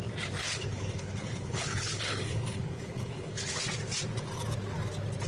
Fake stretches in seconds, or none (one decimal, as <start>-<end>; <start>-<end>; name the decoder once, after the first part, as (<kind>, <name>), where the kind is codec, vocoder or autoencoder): 0.4-3.6 (codec, HILCodec)

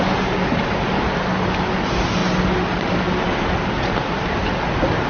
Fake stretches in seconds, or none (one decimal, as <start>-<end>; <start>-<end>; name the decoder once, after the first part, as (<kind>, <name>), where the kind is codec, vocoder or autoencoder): none

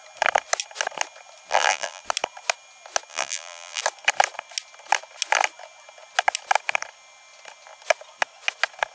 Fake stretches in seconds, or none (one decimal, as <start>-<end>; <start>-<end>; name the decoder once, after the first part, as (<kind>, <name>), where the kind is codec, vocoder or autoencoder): 1.5-2.0 (vocoder, BigVGAN v2); 3.1-3.8

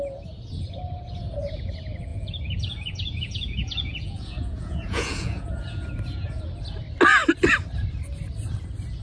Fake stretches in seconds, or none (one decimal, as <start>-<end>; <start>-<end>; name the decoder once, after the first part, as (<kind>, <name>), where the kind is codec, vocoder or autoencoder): 2.1-6.4 (vocoder, Vocos)